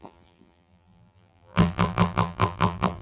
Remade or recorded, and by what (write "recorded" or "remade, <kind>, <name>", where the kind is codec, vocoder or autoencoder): remade, vocoder, BigVGAN v2